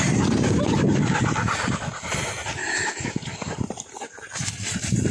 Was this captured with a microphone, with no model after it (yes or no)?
no